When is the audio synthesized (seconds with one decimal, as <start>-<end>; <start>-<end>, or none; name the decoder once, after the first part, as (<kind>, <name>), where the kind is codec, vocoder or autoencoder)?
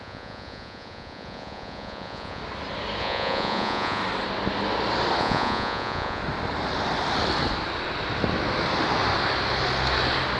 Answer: 0.0-2.4 (vocoder, Vocos); 3.0-4.0; 5.2-6.2